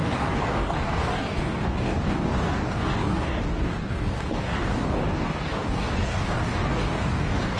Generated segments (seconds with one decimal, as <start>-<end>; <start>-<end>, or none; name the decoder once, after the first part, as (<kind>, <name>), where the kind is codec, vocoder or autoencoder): 0.0-7.6 (codec, DAC)